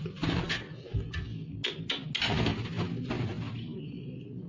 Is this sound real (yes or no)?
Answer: yes